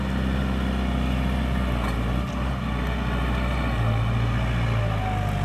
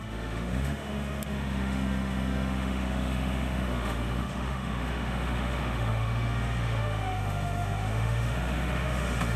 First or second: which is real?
first